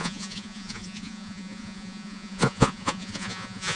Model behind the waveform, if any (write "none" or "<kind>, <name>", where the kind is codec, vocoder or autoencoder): vocoder, Vocos